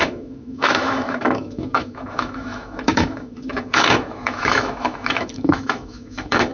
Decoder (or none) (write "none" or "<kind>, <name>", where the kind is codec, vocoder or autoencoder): autoencoder, DAC-VAE